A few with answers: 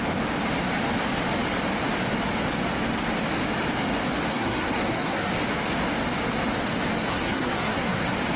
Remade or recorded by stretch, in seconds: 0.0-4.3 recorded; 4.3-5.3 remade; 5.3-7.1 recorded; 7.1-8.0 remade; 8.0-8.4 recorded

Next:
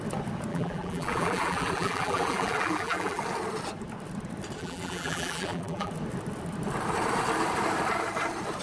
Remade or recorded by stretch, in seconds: 0.0-0.5 recorded; 0.5-3.2 remade; 3.2-4.6 recorded; 4.6-5.9 remade; 5.9-8.6 recorded